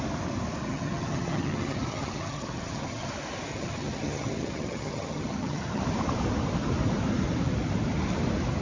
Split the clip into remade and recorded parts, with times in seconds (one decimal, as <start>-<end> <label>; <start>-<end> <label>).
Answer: 0.0-0.6 recorded; 0.6-3.1 remade; 3.1-3.5 recorded; 3.5-5.8 remade; 5.8-8.6 recorded